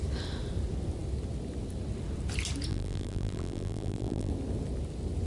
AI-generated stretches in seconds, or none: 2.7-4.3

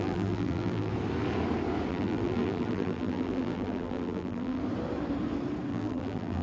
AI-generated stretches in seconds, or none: 0.0-0.9; 1.9-4.6; 5.7-6.4

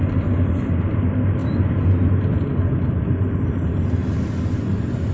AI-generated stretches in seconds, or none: 0.0-1.4; 3.5-4.0